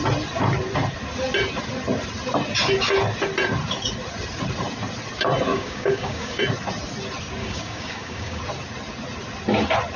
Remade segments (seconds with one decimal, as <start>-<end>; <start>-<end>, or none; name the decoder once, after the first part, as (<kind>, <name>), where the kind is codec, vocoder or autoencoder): 5.5-6.4 (codec, DAC); 7.4-8.4